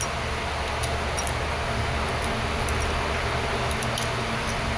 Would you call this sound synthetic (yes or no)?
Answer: no